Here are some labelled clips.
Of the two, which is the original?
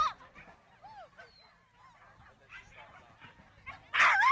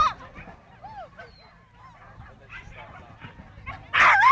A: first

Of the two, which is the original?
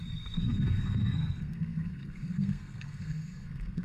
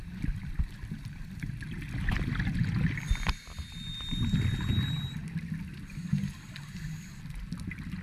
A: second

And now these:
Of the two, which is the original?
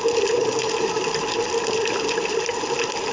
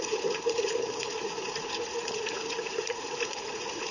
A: first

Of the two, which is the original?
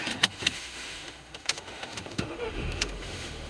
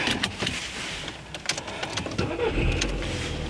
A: second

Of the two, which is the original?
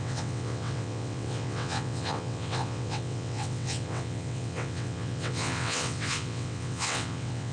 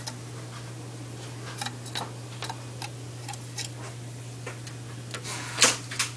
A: second